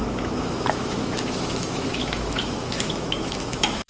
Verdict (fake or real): fake